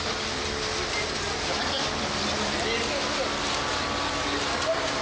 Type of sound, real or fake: real